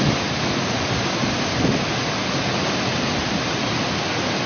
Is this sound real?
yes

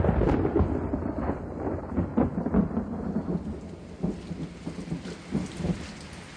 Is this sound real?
yes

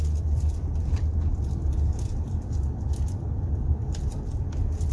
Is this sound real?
no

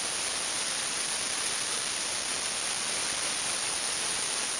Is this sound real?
yes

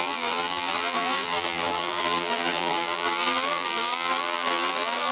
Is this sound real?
no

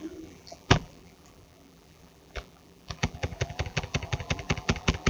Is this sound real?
no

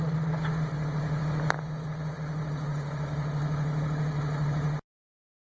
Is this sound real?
yes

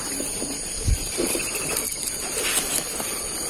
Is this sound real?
no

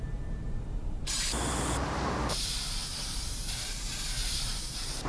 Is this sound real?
no